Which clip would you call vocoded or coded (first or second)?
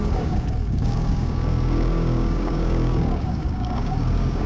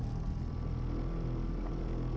first